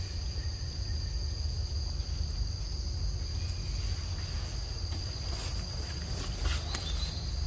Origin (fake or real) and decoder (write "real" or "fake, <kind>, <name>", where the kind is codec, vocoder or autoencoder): real